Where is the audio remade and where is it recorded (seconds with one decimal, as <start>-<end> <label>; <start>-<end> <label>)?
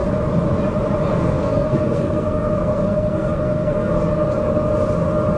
0.0-1.1 recorded; 1.1-4.0 remade; 4.0-5.4 recorded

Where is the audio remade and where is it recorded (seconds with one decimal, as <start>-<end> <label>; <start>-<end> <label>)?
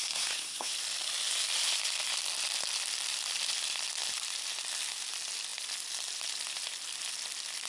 0.0-0.7 remade; 0.7-7.7 recorded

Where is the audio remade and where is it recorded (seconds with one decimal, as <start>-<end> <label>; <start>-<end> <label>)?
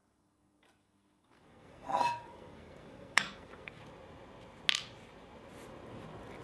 0.0-3.8 remade; 3.8-6.4 recorded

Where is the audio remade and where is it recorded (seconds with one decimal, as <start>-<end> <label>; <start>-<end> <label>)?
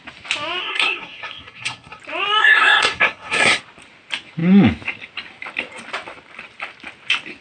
0.0-0.6 recorded; 0.6-2.0 remade; 2.0-2.4 recorded; 2.4-3.6 remade; 3.6-7.4 recorded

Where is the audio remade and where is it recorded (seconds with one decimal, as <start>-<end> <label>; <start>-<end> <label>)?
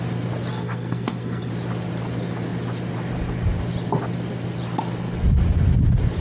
0.0-0.5 recorded; 0.5-1.5 remade; 1.5-6.2 recorded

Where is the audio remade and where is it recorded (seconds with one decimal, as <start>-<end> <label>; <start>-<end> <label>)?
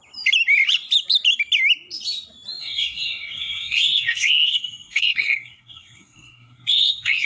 0.0-2.6 recorded; 2.6-7.3 remade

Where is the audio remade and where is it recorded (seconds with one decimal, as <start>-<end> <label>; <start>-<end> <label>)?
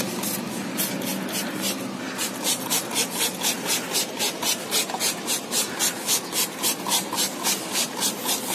0.0-8.5 recorded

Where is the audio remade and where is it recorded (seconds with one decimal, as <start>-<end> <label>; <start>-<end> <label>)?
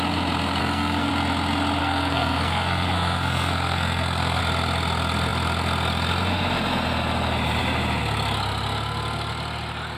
0.0-0.6 recorded; 0.6-1.1 remade; 1.1-1.8 recorded; 1.8-4.4 remade; 4.4-10.0 recorded